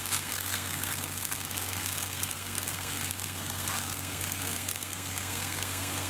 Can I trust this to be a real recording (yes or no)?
no